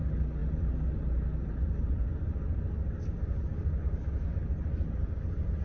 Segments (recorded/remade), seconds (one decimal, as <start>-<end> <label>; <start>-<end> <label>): 0.0-5.6 recorded